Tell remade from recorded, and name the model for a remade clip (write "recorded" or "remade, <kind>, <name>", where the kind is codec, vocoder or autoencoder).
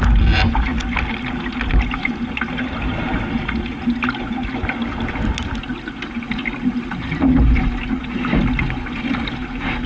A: recorded